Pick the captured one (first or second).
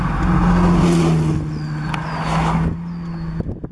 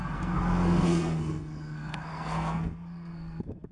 first